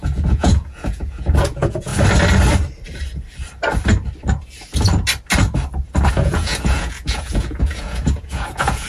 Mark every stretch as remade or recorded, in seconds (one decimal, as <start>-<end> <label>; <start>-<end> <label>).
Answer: 0.0-1.9 remade; 1.9-6.1 recorded; 6.1-8.9 remade

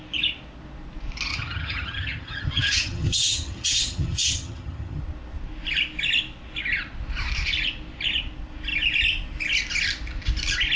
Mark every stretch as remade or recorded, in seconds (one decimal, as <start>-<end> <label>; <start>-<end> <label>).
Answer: 0.0-1.3 recorded; 1.3-5.0 remade; 5.0-10.8 recorded